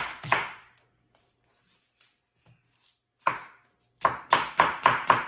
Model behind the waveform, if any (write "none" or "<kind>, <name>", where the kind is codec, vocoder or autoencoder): none